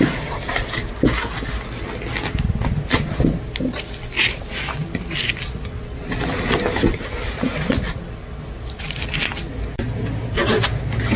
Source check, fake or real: real